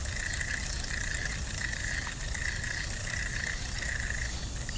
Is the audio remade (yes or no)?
no